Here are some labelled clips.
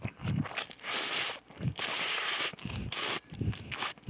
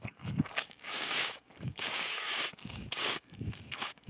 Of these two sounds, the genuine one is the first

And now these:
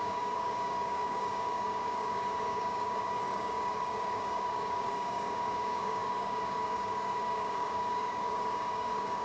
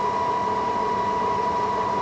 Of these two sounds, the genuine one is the second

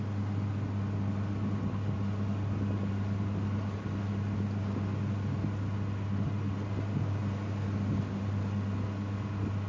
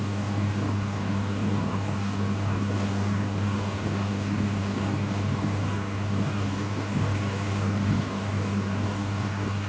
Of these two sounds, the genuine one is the first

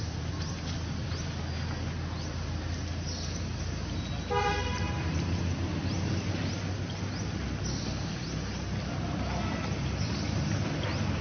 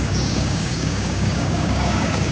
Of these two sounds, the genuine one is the first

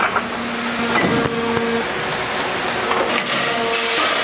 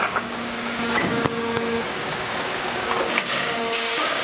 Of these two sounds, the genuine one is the first